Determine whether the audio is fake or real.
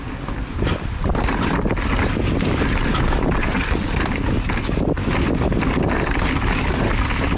real